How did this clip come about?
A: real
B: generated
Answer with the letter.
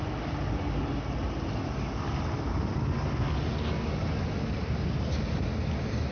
A